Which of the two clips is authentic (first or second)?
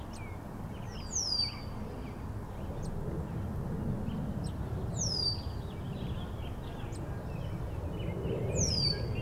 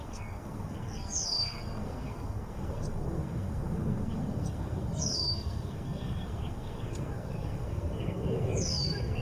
first